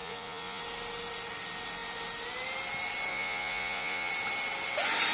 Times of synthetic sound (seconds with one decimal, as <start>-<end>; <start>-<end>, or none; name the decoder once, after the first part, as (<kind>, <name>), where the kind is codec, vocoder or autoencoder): 0.0-0.6 (vocoder, Vocos); 3.1-4.1

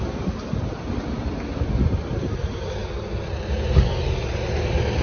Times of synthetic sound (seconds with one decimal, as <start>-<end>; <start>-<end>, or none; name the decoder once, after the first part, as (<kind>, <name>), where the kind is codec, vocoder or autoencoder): none

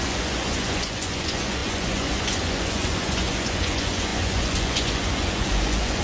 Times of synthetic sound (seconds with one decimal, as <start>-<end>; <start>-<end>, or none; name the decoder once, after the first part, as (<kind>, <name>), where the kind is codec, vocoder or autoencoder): 0.0-6.0 (vocoder, Vocos)

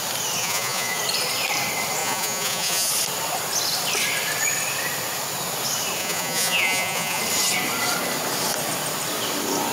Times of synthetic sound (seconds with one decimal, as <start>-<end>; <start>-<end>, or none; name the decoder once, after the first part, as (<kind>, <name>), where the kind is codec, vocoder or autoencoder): 0.4-1.0 (vocoder, Vocos); 2.0-2.9; 6.0-7.2

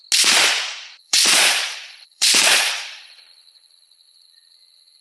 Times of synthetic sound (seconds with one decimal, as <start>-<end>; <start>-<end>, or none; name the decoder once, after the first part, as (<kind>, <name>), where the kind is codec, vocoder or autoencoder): 1.0-5.0 (vocoder, Vocos)

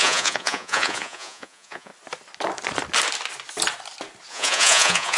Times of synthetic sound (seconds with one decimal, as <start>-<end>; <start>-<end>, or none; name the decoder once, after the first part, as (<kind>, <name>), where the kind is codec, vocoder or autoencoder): 0.0-1.9 (vocoder, Vocos); 4.3-5.2

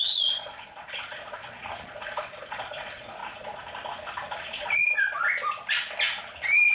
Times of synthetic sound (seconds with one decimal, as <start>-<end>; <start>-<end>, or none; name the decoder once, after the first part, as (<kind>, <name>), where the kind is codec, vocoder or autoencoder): 0.0-3.2 (vocoder, Vocos); 4.4-5.2